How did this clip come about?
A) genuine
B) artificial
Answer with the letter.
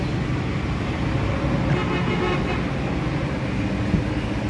A